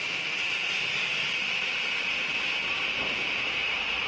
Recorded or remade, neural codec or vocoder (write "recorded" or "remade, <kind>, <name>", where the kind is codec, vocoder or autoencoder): recorded